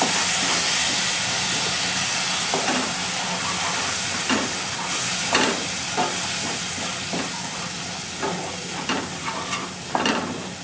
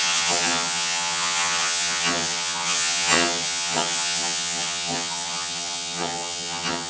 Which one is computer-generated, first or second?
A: second